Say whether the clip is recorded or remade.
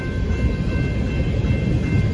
recorded